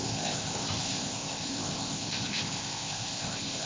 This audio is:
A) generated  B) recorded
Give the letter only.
A